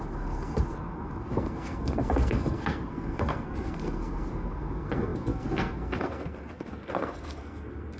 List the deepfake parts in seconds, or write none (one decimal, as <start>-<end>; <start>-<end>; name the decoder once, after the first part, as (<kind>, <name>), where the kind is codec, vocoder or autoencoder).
0.0-8.0 (codec, SNAC)